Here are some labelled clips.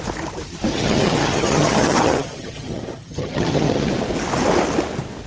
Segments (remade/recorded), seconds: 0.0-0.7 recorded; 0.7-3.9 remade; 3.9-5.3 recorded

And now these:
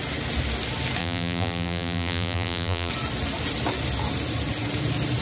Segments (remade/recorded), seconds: 0.0-1.0 recorded; 1.0-2.9 remade; 2.9-5.2 recorded

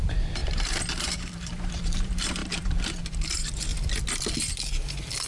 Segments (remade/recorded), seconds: 0.0-3.7 remade; 3.7-5.3 recorded

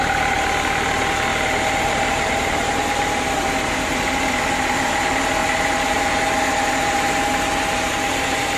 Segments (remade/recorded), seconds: 0.0-1.3 recorded; 1.3-3.4 remade; 3.4-5.4 recorded; 5.4-7.4 remade; 7.4-8.6 recorded

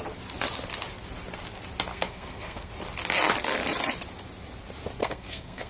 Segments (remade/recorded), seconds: 0.0-1.9 recorded; 1.9-2.7 remade; 2.7-5.0 recorded; 5.0-5.7 remade

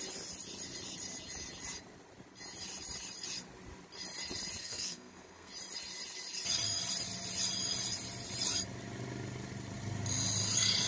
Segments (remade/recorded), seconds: 0.0-4.6 recorded; 4.6-5.5 remade; 5.5-10.9 recorded

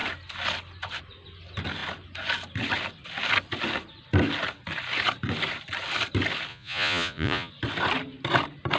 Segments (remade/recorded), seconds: 0.0-6.5 recorded; 6.5-7.5 remade; 7.5-8.8 recorded

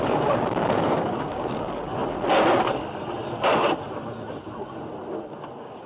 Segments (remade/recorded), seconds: 0.0-2.0 remade; 2.0-5.5 recorded; 5.5-5.9 remade